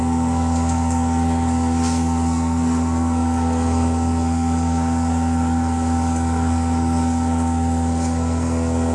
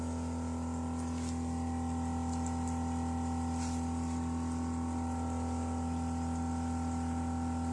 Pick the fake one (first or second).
first